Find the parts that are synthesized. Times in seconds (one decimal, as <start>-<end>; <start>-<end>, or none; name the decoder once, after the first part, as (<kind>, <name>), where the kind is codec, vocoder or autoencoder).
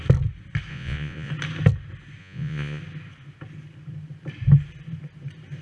0.7-1.3 (vocoder, Vocos); 2.2-2.8